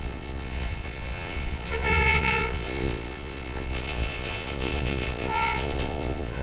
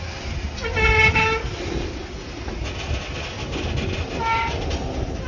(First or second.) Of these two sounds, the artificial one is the first